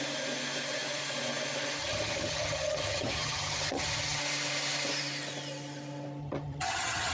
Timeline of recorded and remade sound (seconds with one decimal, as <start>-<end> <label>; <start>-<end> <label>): 0.0-1.8 recorded; 1.8-4.2 remade; 4.2-6.2 recorded; 6.2-7.1 remade